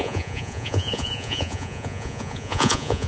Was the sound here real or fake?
fake